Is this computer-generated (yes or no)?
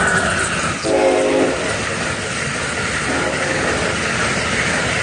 no